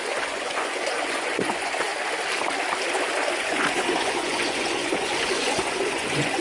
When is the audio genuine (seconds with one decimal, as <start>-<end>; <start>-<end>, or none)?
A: 1.9-3.0